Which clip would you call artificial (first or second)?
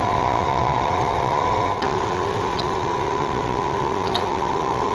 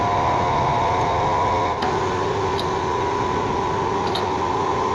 first